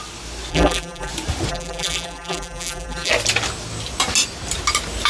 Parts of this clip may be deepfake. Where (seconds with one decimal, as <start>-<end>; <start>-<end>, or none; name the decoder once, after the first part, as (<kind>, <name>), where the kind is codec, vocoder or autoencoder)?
0.5-1.1 (vocoder, BigVGAN v2); 1.5-3.1